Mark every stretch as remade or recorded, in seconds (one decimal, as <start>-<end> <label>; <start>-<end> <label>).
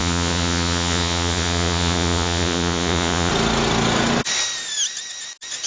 0.0-3.3 remade; 3.3-5.7 recorded